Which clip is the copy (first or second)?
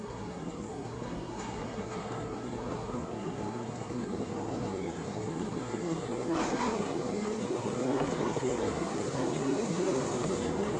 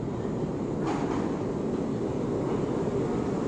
first